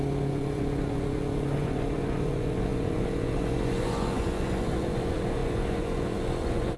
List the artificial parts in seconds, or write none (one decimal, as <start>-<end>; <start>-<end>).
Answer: 0.0-6.8